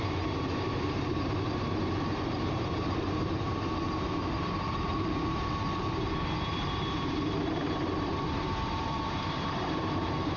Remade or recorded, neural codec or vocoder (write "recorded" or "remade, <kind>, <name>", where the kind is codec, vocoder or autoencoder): remade, vocoder, BigVGAN v2